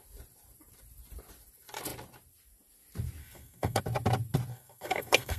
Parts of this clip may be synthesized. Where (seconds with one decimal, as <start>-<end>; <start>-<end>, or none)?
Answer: 3.2-3.8; 4.5-5.4